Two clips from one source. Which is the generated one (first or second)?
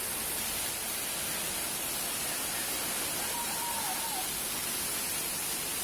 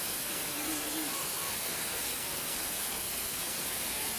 second